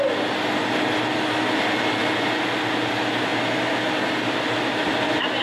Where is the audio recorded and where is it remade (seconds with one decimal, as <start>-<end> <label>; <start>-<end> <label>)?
0.0-5.4 recorded